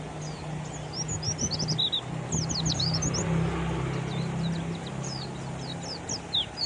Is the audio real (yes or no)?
yes